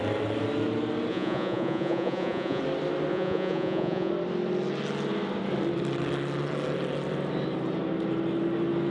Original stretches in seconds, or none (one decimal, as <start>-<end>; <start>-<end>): 0.0-1.1; 2.6-3.1; 4.1-8.9